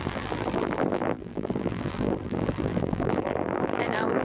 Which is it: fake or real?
fake